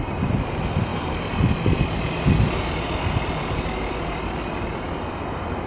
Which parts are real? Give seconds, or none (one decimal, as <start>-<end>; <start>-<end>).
0.0-5.7